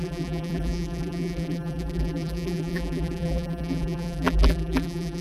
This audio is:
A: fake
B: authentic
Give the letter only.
A